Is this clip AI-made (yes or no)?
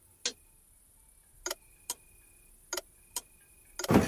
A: no